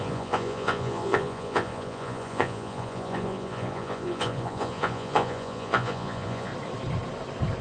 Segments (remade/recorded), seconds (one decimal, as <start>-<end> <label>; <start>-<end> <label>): 0.0-6.5 remade; 6.5-7.6 recorded